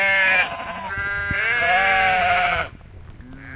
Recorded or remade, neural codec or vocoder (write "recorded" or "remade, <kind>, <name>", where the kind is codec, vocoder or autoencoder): recorded